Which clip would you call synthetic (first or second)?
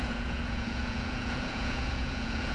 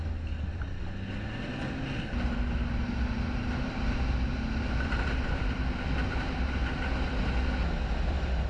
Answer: first